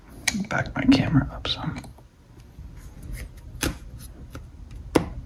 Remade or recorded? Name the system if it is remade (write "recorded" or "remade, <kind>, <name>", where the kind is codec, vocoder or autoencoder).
recorded